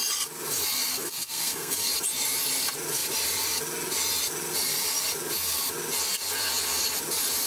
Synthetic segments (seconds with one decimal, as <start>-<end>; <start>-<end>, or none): 0.9-1.9